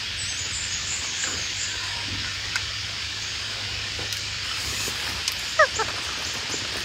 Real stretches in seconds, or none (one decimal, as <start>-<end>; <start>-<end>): 0.0-0.8; 4.9-6.8